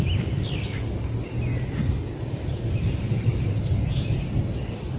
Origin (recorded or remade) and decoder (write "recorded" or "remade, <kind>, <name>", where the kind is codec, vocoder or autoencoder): recorded